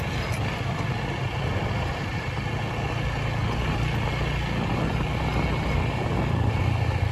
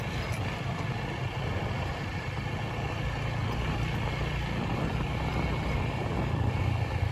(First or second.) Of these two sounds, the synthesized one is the second